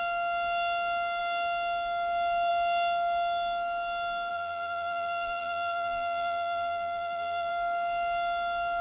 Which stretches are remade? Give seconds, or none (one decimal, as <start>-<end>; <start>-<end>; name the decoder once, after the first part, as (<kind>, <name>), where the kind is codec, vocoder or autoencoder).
4.3-7.5 (vocoder, BigVGAN v2)